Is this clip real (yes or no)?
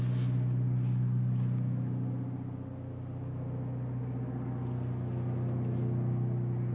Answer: yes